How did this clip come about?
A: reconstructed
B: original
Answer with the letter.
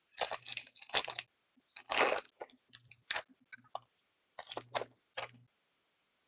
B